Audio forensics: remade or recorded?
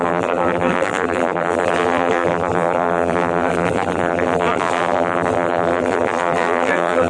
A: remade